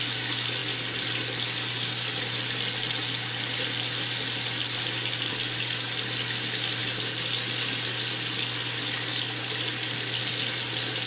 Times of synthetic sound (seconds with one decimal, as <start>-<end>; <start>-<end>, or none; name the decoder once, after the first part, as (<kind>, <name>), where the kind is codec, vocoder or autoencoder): none